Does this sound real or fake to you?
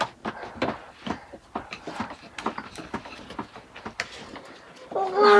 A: real